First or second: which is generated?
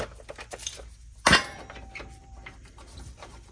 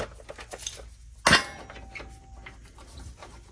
first